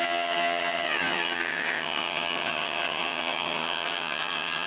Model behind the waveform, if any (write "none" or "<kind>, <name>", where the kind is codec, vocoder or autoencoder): vocoder, HiFi-GAN